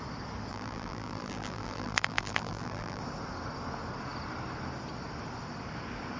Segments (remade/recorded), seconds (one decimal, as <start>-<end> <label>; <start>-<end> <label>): 0.0-0.5 recorded; 0.5-3.0 remade; 3.0-6.2 recorded